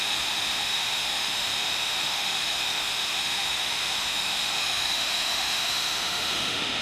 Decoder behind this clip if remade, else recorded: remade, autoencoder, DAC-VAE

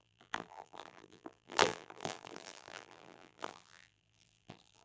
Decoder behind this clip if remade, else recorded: remade, vocoder, BigVGAN v2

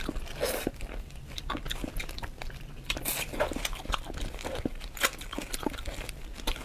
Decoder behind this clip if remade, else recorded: recorded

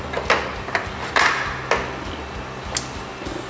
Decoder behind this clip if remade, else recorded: recorded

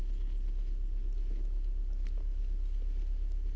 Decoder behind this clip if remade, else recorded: recorded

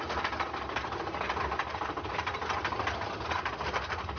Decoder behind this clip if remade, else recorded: recorded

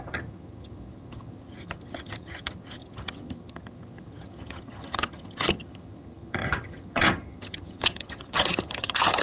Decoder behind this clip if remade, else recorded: remade, vocoder, HiFi-GAN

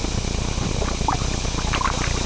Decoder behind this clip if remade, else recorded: recorded